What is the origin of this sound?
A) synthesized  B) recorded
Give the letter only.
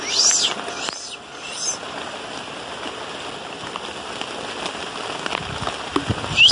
B